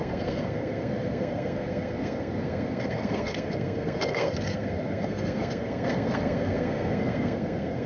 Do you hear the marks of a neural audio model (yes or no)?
yes